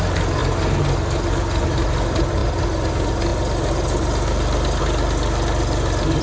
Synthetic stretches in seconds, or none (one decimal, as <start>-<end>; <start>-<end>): none